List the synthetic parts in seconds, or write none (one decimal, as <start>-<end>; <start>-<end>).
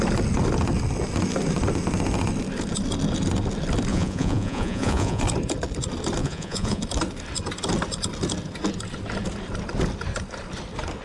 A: 3.9-5.2; 6.2-6.8